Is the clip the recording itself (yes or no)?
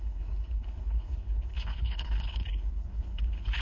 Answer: no